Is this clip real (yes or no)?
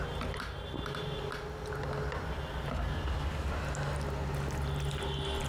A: yes